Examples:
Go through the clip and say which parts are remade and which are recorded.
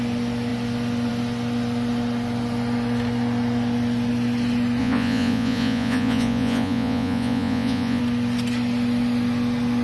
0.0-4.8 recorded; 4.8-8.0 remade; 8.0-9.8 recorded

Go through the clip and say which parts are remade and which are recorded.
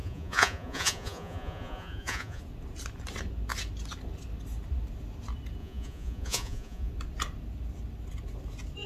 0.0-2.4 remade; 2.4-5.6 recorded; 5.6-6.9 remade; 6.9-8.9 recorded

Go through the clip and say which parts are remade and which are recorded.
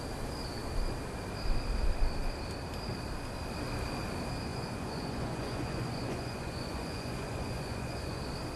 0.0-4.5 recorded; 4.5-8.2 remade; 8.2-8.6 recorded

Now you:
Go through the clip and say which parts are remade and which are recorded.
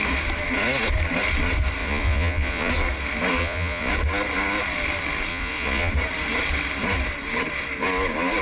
0.0-1.8 recorded; 1.8-2.7 remade; 2.7-3.4 recorded; 3.4-3.9 remade; 3.9-5.3 recorded; 5.3-5.9 remade; 5.9-8.4 recorded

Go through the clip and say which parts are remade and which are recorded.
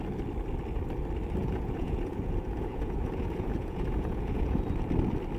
0.0-1.4 recorded; 1.4-4.6 remade; 4.6-5.4 recorded